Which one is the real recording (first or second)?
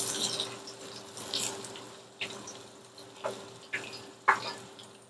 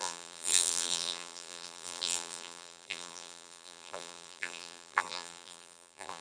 first